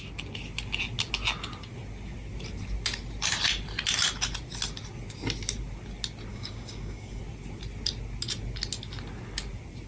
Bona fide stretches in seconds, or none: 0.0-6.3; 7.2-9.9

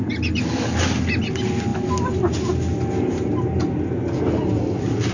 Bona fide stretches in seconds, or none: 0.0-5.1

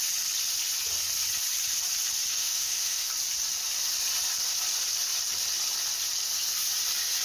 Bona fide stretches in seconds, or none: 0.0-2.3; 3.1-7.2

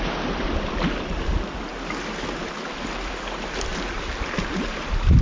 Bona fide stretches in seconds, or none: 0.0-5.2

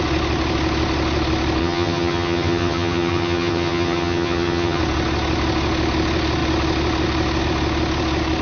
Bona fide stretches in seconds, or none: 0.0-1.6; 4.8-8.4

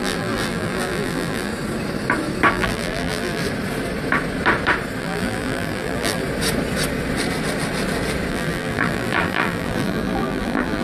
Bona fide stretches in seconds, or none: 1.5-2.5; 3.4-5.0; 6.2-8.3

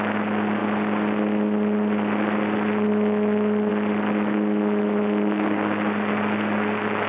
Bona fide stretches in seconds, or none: 0.0-7.1

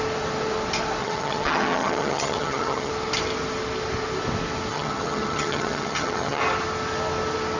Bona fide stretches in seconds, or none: 0.0-1.0; 2.9-4.7; 6.4-7.6